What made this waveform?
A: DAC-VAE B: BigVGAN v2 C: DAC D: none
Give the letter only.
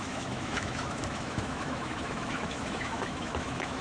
A